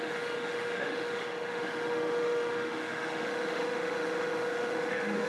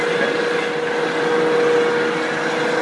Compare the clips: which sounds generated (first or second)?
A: first